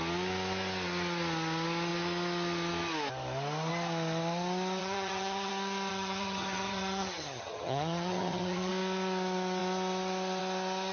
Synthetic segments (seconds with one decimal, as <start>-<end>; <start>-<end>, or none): 4.8-5.5; 5.9-8.7